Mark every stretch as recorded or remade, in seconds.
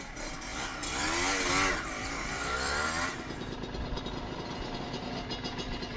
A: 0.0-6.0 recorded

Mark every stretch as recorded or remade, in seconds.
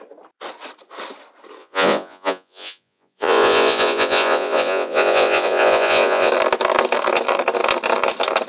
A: 0.0-1.6 recorded; 1.6-6.3 remade; 6.3-8.5 recorded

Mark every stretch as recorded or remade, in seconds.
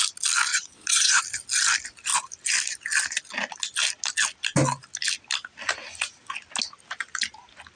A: 0.0-0.5 recorded; 0.5-1.2 remade; 1.2-7.8 recorded